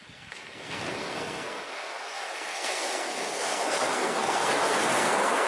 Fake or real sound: fake